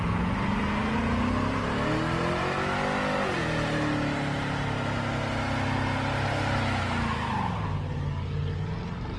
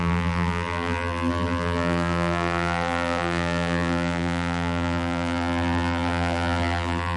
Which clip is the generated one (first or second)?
second